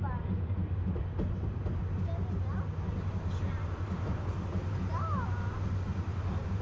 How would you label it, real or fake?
real